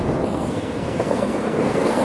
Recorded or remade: remade